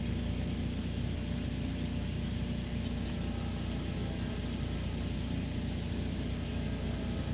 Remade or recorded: recorded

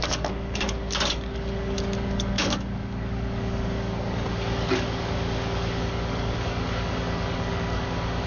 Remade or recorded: remade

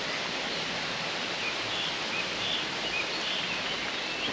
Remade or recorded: recorded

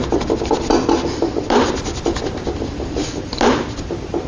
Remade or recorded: recorded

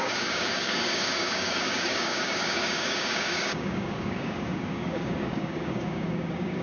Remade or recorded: remade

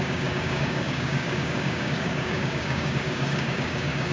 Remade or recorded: remade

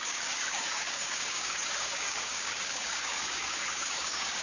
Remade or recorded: remade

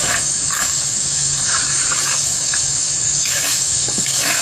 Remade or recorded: remade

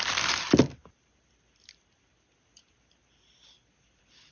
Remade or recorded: recorded